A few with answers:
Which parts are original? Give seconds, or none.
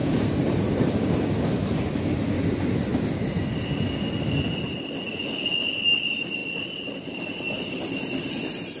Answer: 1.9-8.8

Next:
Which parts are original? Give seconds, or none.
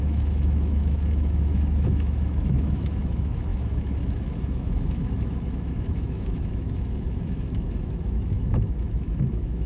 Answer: none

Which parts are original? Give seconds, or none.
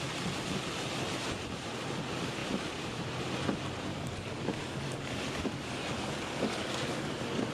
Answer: 0.0-3.9